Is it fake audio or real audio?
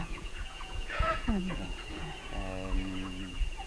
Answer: fake